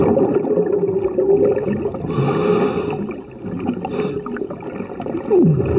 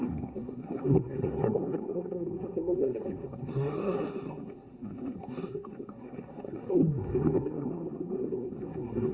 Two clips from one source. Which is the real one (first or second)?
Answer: first